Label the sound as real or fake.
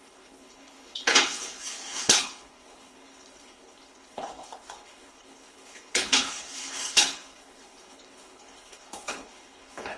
fake